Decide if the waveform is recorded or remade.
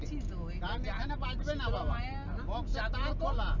recorded